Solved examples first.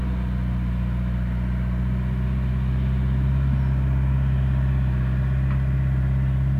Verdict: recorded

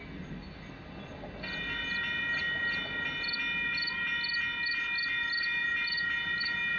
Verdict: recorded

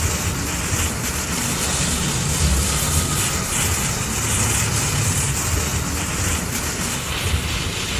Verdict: recorded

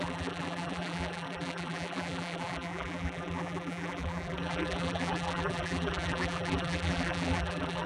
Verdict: remade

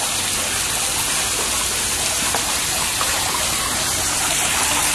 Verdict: recorded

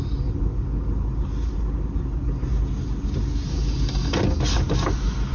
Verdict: recorded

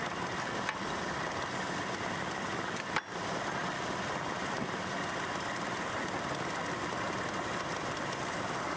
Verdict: recorded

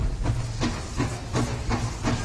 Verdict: recorded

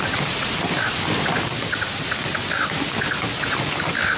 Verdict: recorded